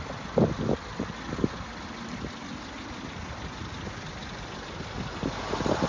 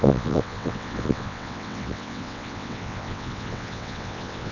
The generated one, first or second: second